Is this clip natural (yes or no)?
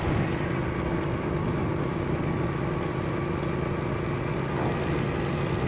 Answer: yes